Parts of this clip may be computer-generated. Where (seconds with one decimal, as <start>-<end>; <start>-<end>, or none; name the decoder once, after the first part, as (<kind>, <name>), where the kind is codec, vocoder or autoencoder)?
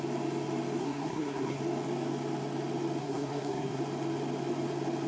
0.8-1.6 (codec, SNAC); 3.0-3.8